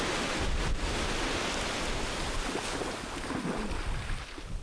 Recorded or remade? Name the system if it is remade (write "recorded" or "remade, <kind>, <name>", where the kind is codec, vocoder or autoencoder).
recorded